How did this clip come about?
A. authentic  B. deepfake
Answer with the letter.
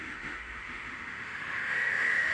B